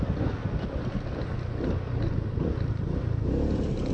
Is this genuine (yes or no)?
yes